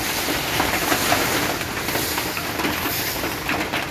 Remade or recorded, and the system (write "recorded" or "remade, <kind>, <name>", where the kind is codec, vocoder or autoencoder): recorded